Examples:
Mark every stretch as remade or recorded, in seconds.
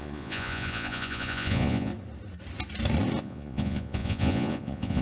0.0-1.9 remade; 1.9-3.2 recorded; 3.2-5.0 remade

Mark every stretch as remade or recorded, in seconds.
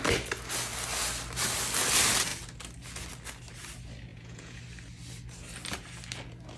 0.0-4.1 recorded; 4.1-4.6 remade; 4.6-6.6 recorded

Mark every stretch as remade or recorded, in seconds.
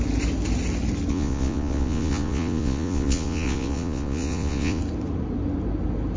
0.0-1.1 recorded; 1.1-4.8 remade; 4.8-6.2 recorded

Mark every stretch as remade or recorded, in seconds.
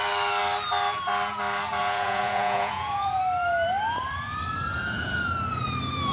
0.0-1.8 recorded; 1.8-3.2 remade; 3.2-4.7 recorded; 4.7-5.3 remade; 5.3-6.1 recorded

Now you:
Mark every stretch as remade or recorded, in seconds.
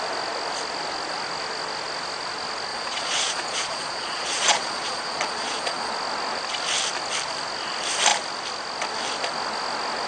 0.0-2.7 recorded; 2.7-5.9 remade; 5.9-10.1 recorded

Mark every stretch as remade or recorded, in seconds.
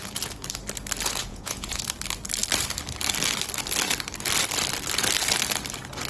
0.0-1.2 recorded; 1.2-1.8 remade; 1.8-6.1 recorded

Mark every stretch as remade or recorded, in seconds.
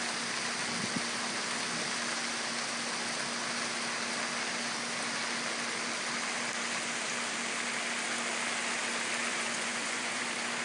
0.0-9.3 recorded; 9.3-10.2 remade; 10.2-10.6 recorded